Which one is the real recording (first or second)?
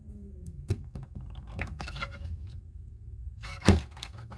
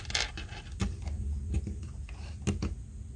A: second